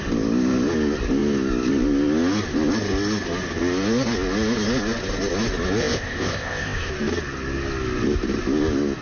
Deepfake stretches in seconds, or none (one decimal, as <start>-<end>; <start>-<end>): 5.8-6.9